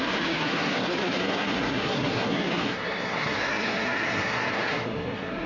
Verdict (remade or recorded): remade